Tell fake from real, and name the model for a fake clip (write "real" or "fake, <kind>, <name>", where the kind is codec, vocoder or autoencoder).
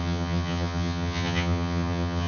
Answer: fake, vocoder, HiFi-GAN